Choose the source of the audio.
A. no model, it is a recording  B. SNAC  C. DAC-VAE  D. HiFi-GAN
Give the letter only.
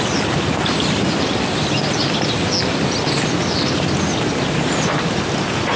A